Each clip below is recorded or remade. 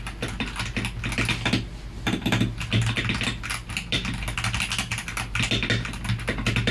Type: recorded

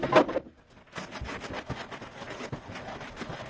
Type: recorded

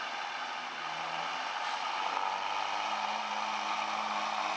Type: recorded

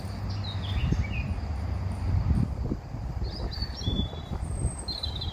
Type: recorded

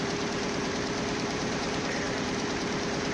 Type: remade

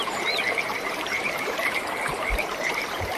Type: remade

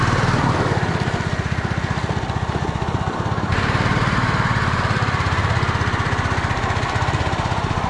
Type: remade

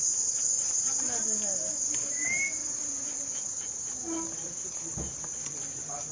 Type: remade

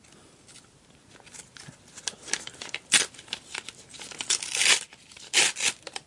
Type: recorded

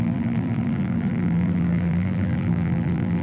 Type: remade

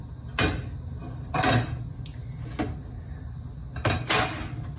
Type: recorded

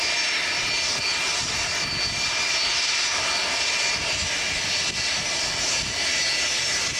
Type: recorded